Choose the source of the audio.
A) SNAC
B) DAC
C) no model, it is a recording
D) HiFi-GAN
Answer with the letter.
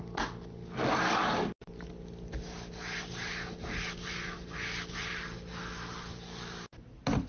C